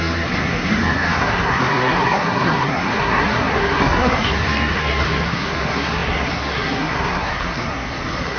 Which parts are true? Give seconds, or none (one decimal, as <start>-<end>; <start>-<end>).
none